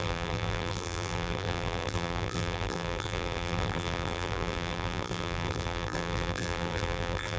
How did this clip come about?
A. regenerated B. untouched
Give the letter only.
A